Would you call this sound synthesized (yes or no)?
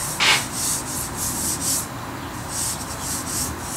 no